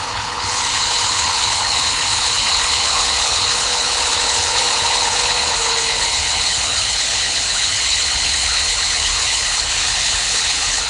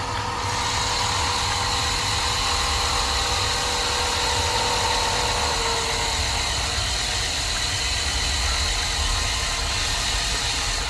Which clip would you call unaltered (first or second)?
second